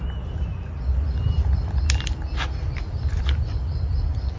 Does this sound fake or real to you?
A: real